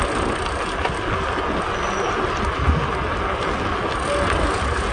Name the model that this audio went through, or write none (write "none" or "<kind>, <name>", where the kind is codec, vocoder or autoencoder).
none